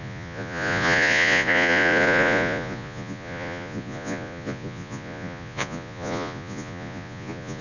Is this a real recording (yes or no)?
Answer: no